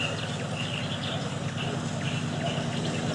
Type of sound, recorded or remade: recorded